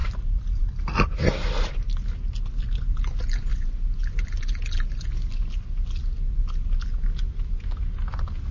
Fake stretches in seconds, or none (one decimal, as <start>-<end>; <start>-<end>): none